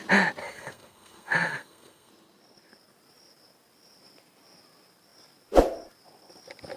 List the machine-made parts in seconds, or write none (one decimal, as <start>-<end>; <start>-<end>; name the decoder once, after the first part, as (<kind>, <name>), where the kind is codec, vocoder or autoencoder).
0.4-2.1 (codec, SNAC)